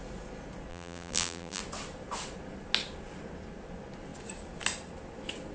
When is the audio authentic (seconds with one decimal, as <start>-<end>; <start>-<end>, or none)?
0.0-0.7; 1.6-5.5